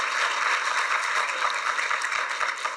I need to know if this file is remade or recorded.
recorded